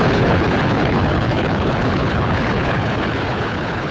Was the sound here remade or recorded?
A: remade